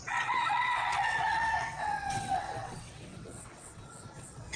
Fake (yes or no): yes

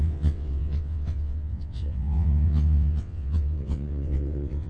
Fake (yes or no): yes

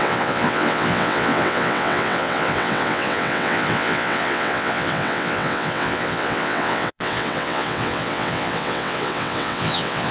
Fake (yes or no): yes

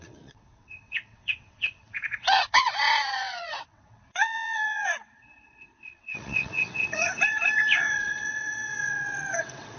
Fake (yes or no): yes